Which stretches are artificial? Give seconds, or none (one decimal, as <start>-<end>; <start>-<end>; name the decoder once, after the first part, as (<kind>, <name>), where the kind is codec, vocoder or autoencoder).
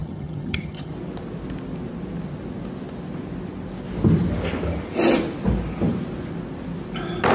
0.0-0.9 (vocoder, HiFi-GAN)